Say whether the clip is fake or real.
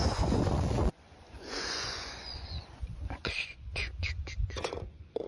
fake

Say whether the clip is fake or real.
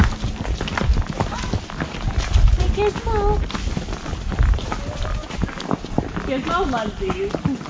real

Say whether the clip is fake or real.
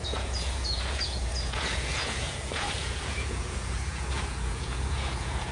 fake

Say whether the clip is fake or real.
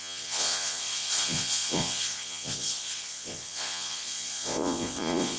fake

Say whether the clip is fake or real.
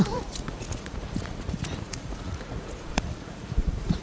fake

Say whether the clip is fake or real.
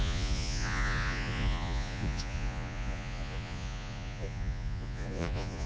fake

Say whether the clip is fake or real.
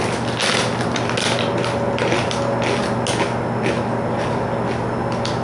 real